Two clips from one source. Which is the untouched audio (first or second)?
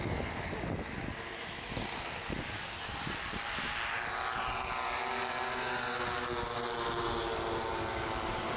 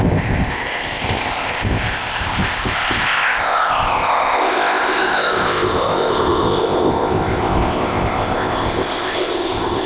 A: first